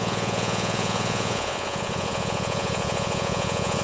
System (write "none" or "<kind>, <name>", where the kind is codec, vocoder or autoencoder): vocoder, Vocos